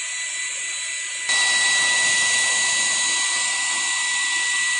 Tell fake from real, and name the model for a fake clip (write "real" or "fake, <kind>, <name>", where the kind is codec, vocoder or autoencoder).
real